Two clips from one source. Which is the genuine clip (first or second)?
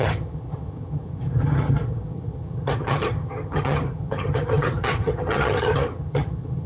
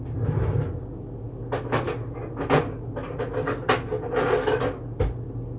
second